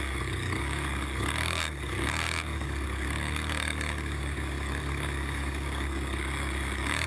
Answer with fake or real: fake